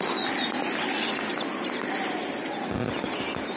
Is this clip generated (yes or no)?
no